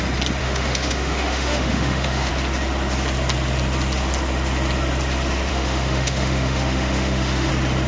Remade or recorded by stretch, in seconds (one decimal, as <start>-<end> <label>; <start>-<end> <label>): 0.0-0.4 recorded; 0.4-2.3 remade; 2.3-5.5 recorded; 5.5-7.5 remade; 7.5-7.9 recorded